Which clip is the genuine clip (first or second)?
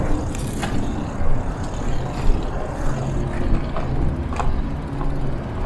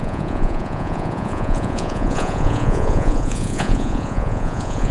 first